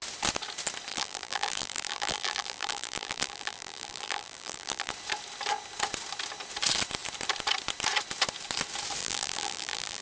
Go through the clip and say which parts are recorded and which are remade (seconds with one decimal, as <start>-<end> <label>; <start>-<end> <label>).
0.0-0.9 recorded; 0.9-4.9 remade; 4.9-9.0 recorded; 9.0-10.0 remade